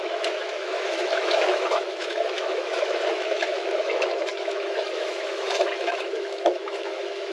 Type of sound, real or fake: fake